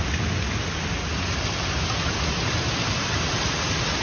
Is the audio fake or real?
real